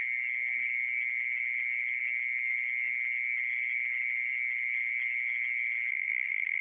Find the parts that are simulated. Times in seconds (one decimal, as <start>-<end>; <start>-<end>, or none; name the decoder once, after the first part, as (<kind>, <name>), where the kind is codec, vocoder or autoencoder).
5.9-6.6 (vocoder, BigVGAN v2)